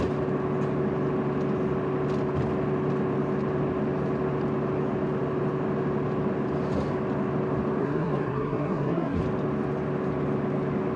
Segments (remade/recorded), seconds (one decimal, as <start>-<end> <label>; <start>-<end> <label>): 0.0-7.8 recorded; 7.8-9.2 remade; 9.2-11.0 recorded